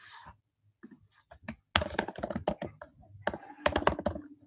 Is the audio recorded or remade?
recorded